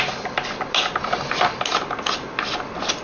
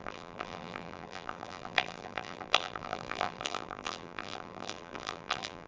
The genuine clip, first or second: first